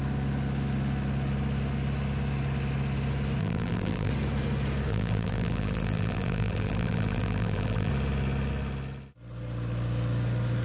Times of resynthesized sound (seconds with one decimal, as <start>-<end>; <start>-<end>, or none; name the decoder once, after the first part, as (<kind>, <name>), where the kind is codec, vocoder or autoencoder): 3.4-4.1 (vocoder, BigVGAN v2); 4.9-7.9